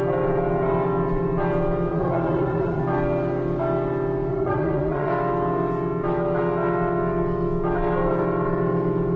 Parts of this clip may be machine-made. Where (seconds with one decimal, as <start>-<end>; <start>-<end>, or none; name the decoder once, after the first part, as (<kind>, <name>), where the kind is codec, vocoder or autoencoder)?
1.9-2.8 (vocoder, Vocos); 4.3-5.1